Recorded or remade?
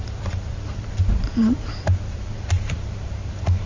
remade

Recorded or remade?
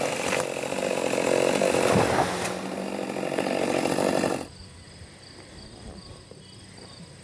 remade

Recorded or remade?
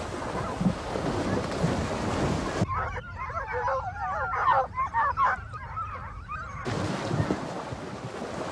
recorded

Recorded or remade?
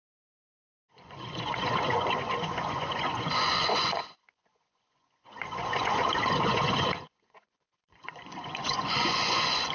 remade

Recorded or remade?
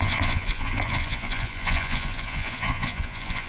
remade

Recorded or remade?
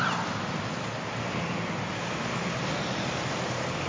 recorded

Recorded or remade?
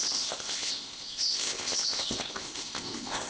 remade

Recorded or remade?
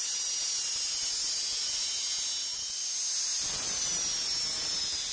recorded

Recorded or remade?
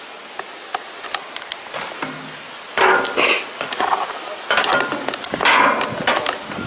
recorded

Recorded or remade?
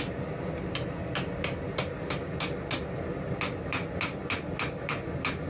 recorded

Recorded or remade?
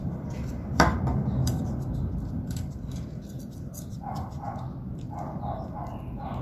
remade